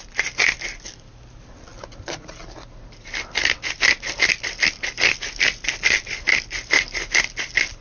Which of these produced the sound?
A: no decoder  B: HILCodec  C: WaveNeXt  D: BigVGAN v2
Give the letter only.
A